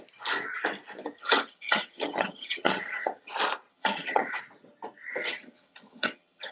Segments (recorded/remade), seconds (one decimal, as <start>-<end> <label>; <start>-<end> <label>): 0.0-1.1 recorded; 1.1-3.3 remade; 3.3-3.7 recorded; 3.7-4.4 remade; 4.4-5.2 recorded; 5.2-6.5 remade